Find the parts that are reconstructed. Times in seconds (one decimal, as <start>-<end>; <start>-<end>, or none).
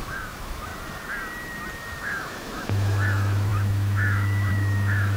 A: 0.0-0.7; 2.0-5.2